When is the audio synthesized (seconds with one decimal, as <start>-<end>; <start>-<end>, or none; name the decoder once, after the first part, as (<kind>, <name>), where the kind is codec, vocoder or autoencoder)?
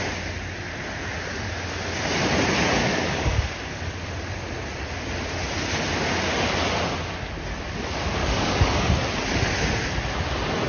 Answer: 2.8-3.5 (codec, DAC); 8.2-8.9